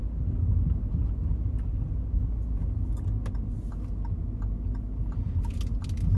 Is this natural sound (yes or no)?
yes